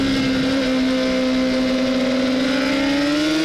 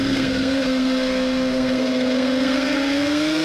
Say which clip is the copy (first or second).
second